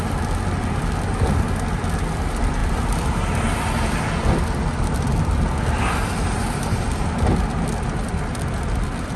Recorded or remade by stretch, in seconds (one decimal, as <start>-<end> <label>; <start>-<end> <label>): 0.0-9.2 recorded